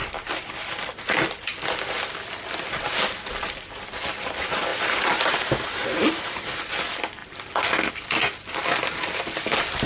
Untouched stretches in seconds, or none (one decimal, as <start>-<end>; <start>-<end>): 0.0-4.7; 6.6-9.9